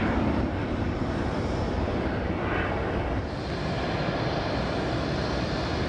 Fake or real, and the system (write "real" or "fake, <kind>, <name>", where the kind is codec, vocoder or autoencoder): real